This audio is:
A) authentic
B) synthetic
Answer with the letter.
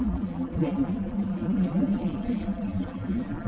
B